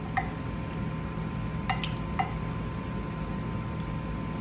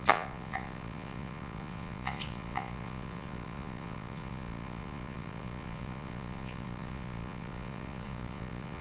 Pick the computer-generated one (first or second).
second